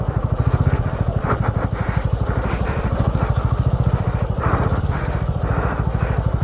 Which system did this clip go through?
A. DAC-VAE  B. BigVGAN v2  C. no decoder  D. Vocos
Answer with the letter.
B